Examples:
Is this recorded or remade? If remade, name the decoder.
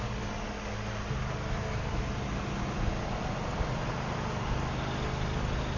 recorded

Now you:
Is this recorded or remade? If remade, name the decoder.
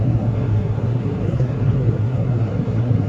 remade, codec, SNAC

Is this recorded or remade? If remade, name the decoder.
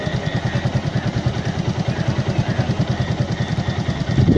recorded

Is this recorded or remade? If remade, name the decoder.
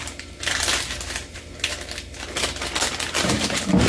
recorded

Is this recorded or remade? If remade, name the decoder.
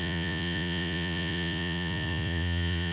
remade, vocoder, Vocos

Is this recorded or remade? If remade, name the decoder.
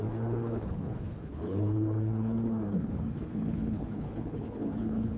remade, codec, HILCodec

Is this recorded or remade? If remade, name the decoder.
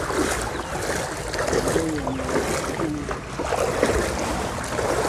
recorded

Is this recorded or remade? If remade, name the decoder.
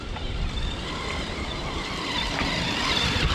remade, vocoder, BigVGAN v2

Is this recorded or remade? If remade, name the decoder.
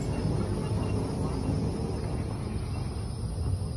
recorded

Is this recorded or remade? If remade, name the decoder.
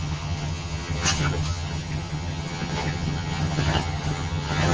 remade, vocoder, HiFi-GAN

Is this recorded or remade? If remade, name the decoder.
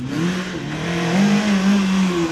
recorded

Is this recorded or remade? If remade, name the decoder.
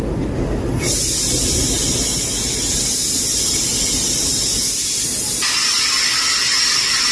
recorded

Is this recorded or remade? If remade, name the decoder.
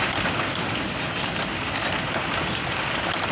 recorded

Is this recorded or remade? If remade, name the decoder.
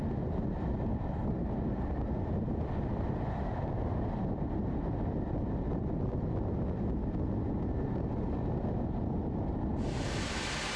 recorded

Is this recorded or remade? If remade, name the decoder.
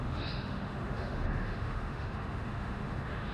remade, autoencoder, DAC-VAE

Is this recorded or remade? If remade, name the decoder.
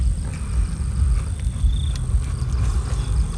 recorded